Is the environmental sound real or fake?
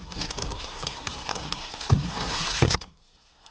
fake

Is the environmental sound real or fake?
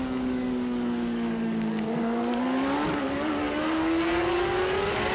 fake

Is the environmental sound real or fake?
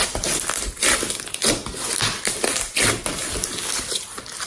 real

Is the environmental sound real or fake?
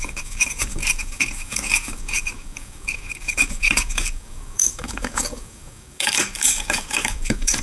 fake